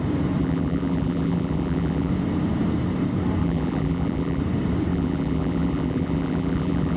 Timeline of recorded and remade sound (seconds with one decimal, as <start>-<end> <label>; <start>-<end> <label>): 0.0-0.4 recorded; 0.4-2.1 remade; 2.1-3.4 recorded; 3.4-4.4 remade; 4.4-4.9 recorded; 4.9-7.0 remade